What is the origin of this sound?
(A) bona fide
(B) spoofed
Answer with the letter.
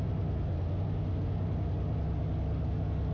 A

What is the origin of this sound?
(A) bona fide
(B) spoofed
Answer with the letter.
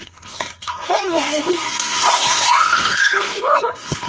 B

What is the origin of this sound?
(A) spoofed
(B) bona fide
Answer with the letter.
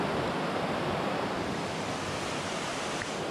B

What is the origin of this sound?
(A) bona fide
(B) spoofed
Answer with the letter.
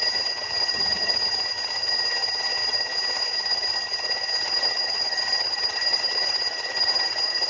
B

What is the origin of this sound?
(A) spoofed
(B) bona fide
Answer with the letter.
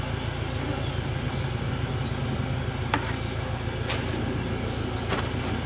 B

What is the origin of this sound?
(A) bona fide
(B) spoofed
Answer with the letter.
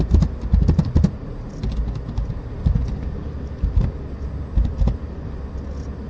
A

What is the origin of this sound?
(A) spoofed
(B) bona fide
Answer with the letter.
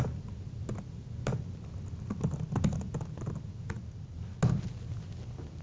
B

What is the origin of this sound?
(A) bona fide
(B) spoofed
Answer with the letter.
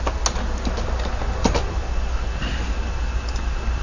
A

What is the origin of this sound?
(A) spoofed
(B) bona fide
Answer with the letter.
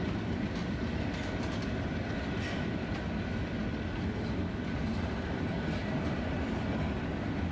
B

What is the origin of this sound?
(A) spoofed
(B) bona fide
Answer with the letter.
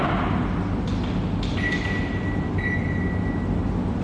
B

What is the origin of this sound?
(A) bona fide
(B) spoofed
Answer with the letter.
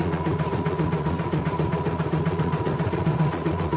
B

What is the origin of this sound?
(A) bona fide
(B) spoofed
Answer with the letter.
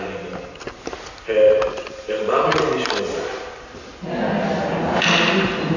A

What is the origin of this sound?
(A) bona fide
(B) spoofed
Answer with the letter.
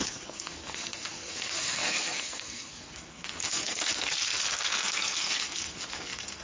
B